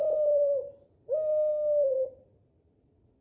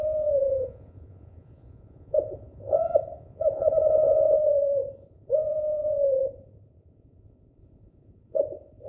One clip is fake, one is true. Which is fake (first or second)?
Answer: second